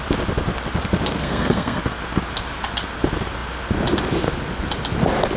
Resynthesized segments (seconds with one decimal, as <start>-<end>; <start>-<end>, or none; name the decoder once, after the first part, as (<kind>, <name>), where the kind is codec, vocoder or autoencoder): 1.2-1.8 (codec, SNAC)